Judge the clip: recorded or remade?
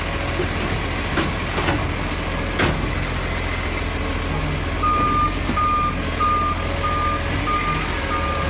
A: recorded